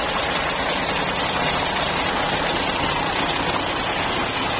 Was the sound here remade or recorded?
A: recorded